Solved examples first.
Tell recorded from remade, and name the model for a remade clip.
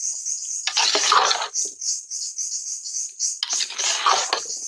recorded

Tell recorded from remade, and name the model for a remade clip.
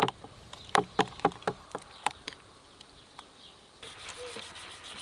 remade, vocoder, BigVGAN v2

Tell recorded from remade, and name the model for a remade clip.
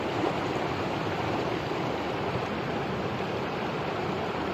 remade, vocoder, BigVGAN v2